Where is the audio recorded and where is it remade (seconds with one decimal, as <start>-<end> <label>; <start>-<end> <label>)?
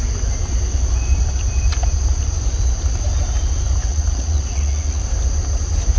0.0-3.9 recorded; 3.9-5.0 remade; 5.0-6.0 recorded